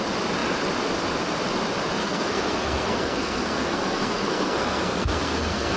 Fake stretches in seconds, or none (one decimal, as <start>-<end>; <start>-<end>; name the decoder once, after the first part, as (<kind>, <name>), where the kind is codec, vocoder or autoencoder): 2.0-5.8 (codec, SNAC)